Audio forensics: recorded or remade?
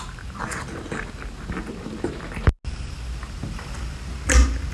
recorded